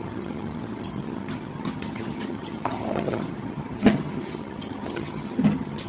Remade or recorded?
remade